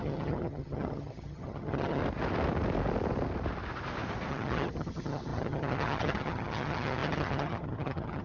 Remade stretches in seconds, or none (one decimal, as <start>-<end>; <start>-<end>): 0.0-2.0; 4.3-8.2